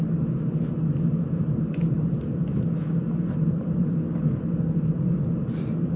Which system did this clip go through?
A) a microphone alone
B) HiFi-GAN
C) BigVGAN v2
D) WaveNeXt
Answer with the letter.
C